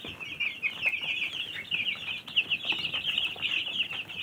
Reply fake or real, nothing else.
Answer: real